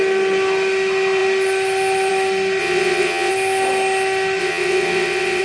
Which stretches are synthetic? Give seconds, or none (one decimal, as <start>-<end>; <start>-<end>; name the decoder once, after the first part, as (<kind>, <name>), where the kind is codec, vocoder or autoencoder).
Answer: 2.6-3.3 (vocoder, WaveNeXt); 4.4-5.4